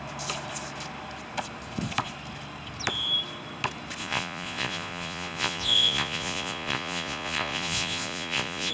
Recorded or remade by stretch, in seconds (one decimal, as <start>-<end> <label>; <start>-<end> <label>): 0.0-4.0 recorded; 4.0-8.7 remade